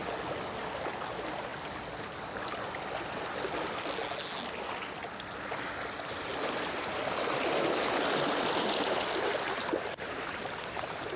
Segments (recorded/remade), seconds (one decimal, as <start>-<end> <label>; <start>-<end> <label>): 0.0-11.2 recorded